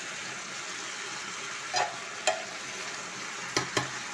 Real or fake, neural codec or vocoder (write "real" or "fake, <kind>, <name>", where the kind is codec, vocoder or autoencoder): real